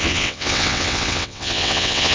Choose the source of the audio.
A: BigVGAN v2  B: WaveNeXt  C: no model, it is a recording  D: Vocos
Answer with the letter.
B